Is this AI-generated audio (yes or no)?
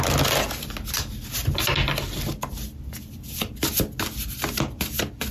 no